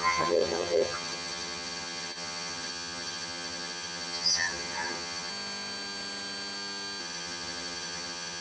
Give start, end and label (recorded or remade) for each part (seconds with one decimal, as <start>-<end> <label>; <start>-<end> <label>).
0.0-5.3 remade; 5.3-7.0 recorded; 7.0-8.4 remade